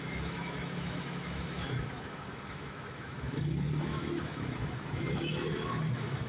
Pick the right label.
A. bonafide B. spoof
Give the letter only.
B